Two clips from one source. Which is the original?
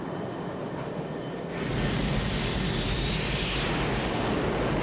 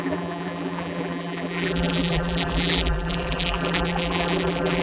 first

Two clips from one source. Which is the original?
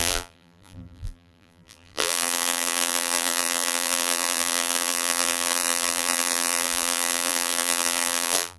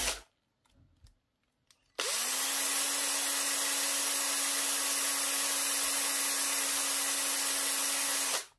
second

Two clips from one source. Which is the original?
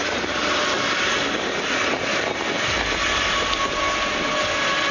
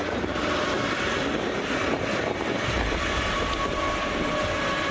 first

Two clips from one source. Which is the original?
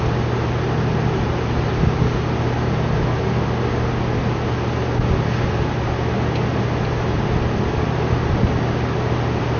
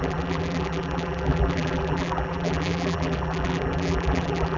first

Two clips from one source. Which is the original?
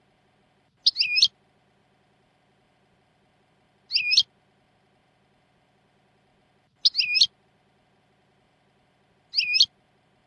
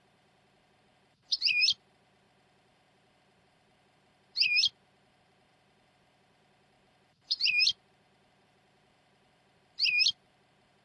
first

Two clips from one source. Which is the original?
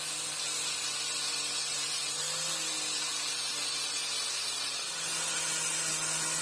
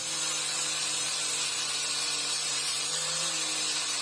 first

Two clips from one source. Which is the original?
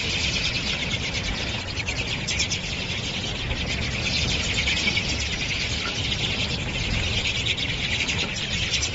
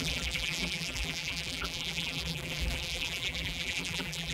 first